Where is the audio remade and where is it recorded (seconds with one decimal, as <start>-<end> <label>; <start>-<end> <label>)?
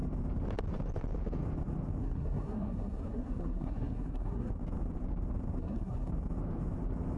0.0-2.0 recorded; 2.0-4.5 remade; 4.5-5.6 recorded; 5.6-6.1 remade; 6.1-7.2 recorded